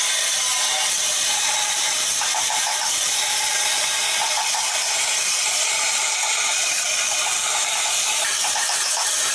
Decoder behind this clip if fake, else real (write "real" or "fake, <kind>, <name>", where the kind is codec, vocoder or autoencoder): fake, vocoder, BigVGAN v2